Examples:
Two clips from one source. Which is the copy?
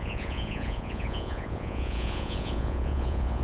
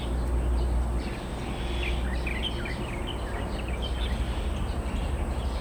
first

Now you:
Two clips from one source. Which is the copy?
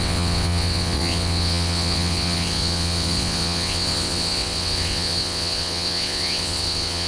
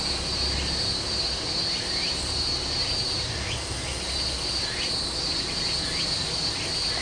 first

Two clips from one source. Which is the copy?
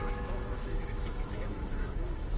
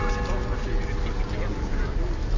first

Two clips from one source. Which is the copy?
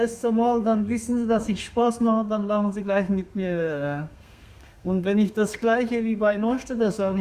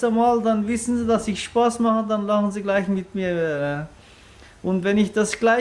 first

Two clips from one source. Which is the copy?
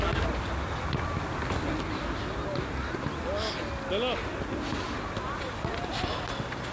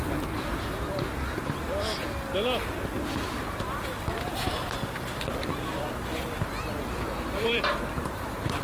second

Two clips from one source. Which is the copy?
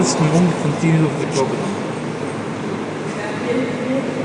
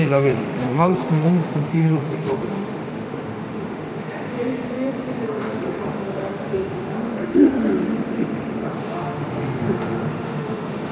second